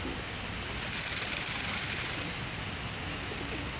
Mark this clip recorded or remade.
recorded